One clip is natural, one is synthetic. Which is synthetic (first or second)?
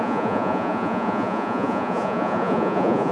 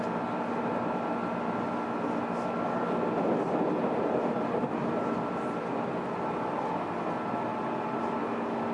first